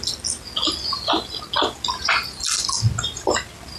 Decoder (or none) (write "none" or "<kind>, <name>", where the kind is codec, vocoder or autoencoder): none